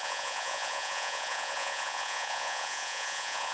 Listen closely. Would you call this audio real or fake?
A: fake